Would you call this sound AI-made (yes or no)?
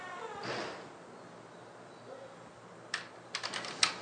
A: no